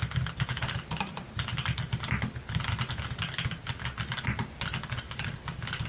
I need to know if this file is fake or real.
real